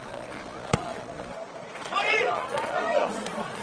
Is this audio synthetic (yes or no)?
yes